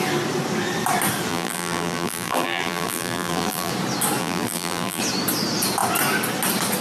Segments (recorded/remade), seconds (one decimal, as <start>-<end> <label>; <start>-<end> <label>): 0.0-1.3 recorded; 1.3-3.7 remade; 3.7-4.2 recorded; 4.2-5.0 remade; 5.0-6.8 recorded